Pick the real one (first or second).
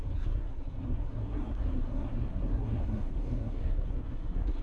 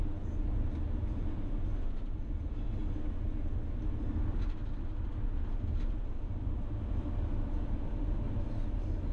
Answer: second